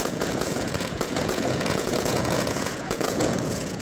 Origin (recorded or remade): remade